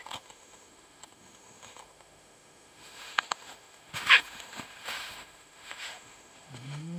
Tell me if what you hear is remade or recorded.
remade